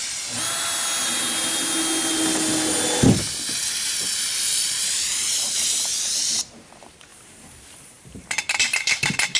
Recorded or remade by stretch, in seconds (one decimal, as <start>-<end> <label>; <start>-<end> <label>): 0.0-3.6 recorded; 3.6-5.2 remade; 5.2-7.1 recorded; 7.1-9.4 remade